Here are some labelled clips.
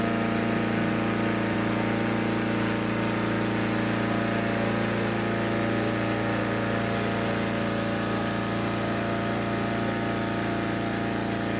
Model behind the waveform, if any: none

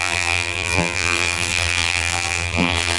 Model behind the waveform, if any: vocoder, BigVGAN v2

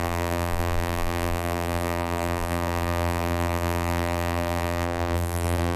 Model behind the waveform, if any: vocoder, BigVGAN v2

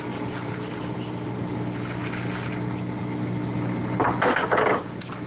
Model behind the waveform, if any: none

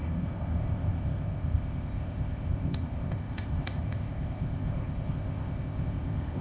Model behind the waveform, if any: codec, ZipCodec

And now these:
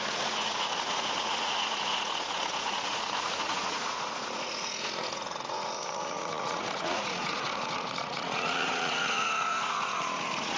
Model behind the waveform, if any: vocoder, Vocos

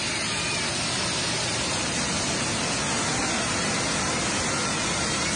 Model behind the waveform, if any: none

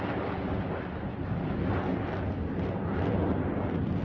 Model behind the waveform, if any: none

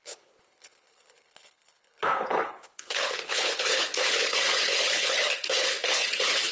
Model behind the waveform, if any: codec, HILCodec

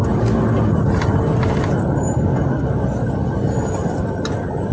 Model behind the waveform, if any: none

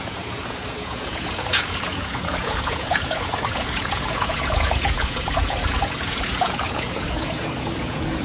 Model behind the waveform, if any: vocoder, Vocos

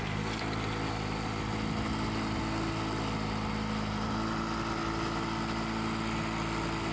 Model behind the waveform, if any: none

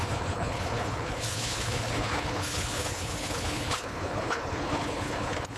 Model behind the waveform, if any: codec, HILCodec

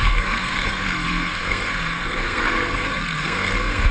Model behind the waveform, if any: codec, SNAC